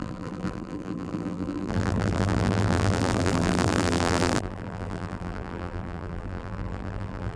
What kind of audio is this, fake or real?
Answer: fake